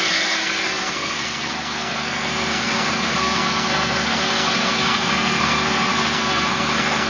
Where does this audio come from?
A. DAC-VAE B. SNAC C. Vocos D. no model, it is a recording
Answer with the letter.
B